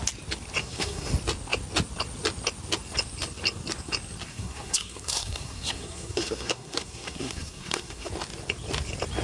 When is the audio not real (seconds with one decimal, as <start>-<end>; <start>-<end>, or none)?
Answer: 0.6-1.1; 4.3-8.1